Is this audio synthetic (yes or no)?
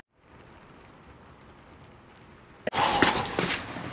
no